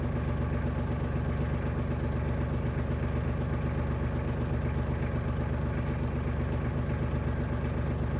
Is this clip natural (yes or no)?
yes